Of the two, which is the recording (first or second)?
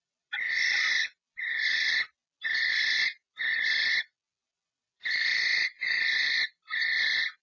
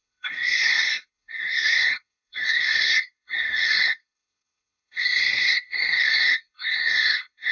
first